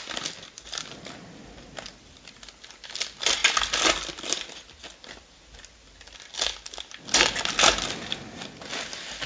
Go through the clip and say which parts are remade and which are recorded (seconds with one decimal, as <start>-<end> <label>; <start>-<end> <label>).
0.0-9.3 recorded